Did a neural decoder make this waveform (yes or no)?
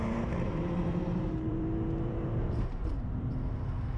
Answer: yes